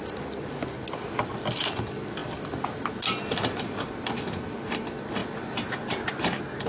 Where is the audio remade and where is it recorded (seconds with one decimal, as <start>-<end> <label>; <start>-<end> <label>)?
0.0-6.7 recorded